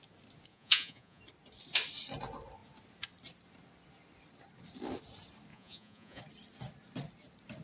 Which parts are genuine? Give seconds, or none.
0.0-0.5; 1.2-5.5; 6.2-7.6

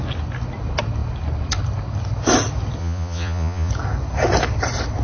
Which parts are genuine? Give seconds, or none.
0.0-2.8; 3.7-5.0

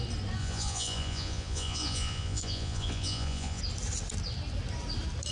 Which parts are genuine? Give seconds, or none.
0.0-0.4; 3.6-5.3